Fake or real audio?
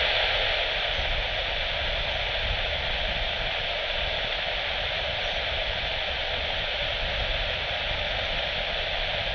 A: real